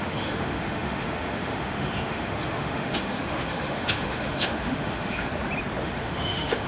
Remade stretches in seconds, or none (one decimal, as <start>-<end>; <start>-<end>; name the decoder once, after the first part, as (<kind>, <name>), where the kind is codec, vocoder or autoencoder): 0.0-5.3 (autoencoder, DAC-VAE); 5.8-6.7